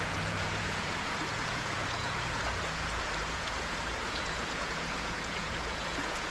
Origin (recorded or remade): remade